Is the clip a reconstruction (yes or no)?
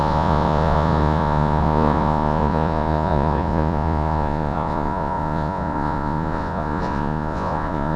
yes